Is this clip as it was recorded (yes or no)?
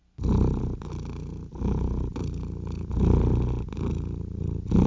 yes